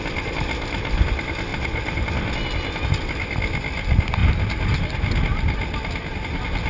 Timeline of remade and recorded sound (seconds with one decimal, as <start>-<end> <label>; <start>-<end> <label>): 0.0-6.7 recorded